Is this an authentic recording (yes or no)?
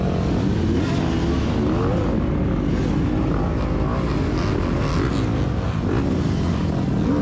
yes